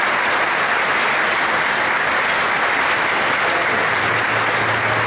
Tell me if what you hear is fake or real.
real